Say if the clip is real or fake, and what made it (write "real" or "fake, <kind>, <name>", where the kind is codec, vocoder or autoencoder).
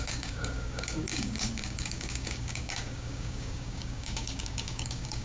fake, codec, DAC